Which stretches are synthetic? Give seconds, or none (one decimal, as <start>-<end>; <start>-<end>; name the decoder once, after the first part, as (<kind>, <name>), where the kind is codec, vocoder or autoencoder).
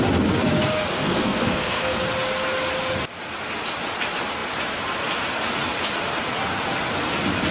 0.9-2.0 (codec, SNAC)